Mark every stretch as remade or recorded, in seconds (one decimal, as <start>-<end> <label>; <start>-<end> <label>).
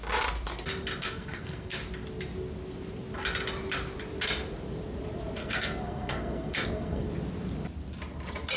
0.0-1.0 recorded; 1.0-1.8 remade; 1.8-5.4 recorded; 5.4-7.1 remade; 7.1-8.6 recorded